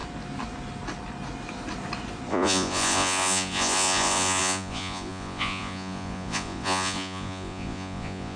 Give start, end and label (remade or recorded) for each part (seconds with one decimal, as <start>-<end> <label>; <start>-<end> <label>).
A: 0.0-2.3 recorded; 2.3-8.4 remade